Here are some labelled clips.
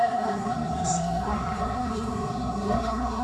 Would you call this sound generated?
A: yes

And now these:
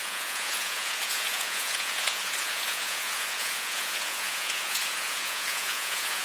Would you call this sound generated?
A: yes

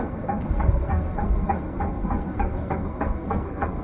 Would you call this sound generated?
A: yes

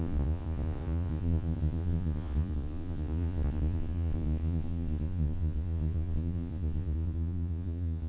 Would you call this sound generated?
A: yes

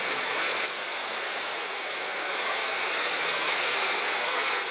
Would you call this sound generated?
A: yes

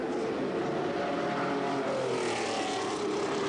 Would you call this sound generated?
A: no